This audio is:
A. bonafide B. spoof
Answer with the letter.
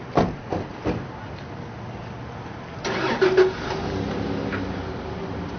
A